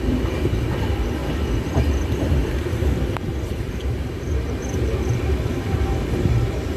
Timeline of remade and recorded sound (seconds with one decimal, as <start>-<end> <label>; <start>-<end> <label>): 0.0-2.4 recorded; 2.4-6.8 remade

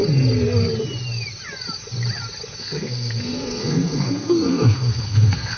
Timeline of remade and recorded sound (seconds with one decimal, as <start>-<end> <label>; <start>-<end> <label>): 0.0-2.6 recorded; 2.6-5.6 remade

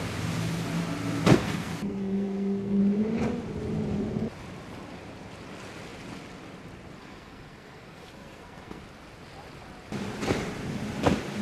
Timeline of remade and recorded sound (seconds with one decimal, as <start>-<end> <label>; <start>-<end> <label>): 0.0-1.3 recorded; 1.3-2.8 remade; 2.8-7.0 recorded; 7.0-8.8 remade; 8.8-11.4 recorded